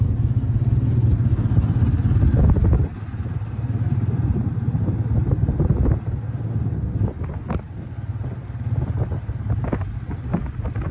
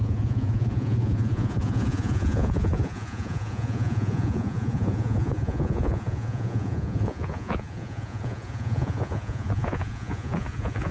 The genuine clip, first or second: first